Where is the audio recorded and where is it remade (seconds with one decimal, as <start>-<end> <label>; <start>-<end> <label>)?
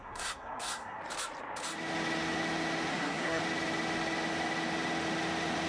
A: 0.0-1.0 remade; 1.0-2.9 recorded; 2.9-3.4 remade; 3.4-5.7 recorded